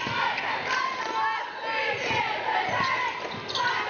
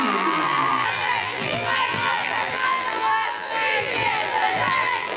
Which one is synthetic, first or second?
second